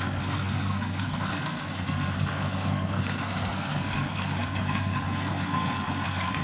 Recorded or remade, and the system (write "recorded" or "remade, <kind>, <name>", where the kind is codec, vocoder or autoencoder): remade, codec, SNAC